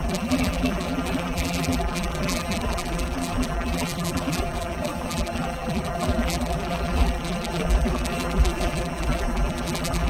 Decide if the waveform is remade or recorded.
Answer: remade